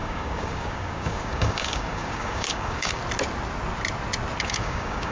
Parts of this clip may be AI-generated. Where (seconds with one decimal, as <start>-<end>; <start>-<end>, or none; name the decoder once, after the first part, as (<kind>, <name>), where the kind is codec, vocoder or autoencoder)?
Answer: 0.0-3.0 (codec, DAC); 4.4-5.1